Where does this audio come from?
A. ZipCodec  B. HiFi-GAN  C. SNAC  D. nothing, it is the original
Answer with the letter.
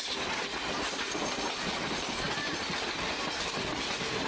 D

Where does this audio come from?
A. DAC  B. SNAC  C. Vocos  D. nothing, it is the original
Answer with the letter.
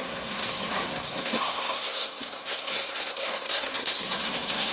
B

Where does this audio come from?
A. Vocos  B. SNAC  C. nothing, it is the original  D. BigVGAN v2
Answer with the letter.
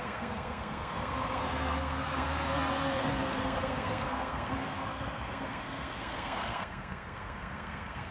B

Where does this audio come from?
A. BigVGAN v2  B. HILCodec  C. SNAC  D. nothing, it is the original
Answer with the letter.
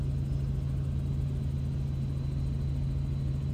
D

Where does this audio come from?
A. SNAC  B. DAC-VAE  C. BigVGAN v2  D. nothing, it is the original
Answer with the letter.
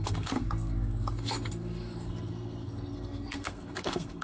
A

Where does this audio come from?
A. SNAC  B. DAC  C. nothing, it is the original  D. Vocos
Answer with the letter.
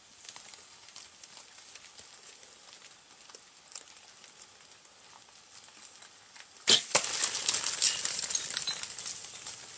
C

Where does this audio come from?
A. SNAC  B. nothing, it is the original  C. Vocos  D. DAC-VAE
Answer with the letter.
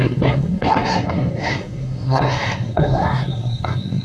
A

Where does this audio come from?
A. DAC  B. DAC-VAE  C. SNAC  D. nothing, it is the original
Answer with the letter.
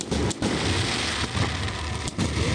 D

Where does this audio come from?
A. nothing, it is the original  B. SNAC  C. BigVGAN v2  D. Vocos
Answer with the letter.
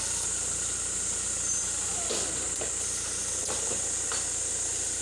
A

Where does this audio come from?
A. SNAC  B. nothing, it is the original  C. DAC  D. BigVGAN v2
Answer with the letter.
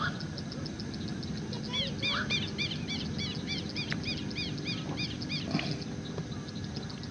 B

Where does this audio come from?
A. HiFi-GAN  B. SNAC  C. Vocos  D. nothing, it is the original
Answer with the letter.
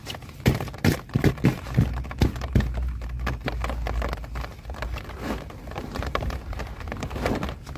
D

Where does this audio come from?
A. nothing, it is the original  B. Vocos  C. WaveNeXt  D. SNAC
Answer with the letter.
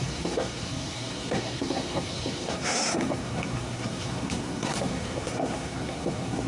D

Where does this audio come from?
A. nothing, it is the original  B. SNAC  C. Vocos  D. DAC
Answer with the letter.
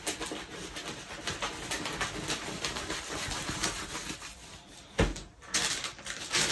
A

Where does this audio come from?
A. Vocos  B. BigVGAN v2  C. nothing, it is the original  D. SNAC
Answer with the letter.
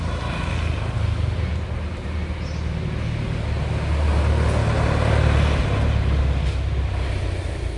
C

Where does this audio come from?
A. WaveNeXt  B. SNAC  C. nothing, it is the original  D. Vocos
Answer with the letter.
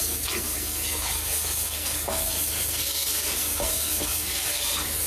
B